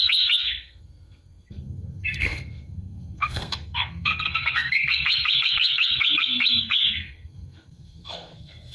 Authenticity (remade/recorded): remade